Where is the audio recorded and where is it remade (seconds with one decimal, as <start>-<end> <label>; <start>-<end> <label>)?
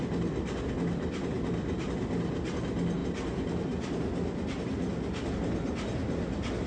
0.0-6.7 recorded